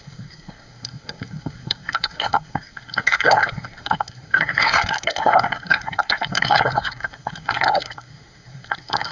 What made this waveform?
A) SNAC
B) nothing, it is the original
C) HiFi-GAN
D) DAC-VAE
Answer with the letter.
A